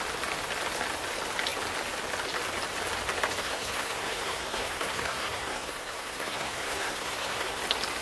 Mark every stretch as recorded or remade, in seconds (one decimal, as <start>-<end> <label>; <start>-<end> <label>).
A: 0.0-3.4 recorded; 3.4-7.6 remade; 7.6-8.0 recorded

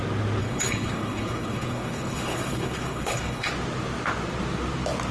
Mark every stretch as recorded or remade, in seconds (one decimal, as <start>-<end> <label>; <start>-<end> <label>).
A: 0.0-0.4 recorded; 0.4-3.5 remade; 3.5-5.1 recorded

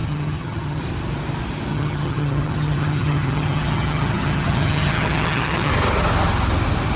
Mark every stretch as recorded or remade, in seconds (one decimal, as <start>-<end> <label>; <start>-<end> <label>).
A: 0.0-0.8 remade; 0.8-1.7 recorded; 1.7-5.7 remade; 5.7-7.0 recorded